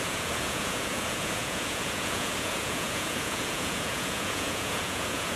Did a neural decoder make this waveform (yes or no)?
yes